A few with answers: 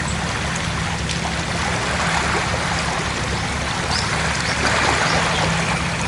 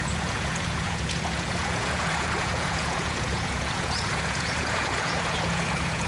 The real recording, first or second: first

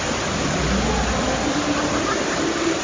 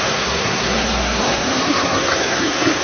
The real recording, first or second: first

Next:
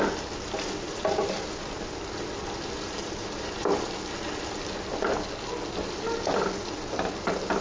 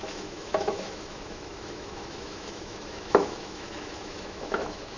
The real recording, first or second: first